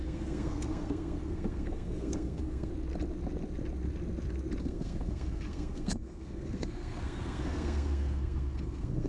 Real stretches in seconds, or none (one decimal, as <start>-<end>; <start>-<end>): 2.7-4.6